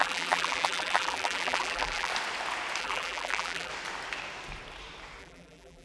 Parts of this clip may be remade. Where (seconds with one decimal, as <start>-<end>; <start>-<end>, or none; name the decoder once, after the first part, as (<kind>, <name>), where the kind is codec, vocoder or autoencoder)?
0.0-2.1 (vocoder, BigVGAN v2); 2.8-3.7; 5.2-5.8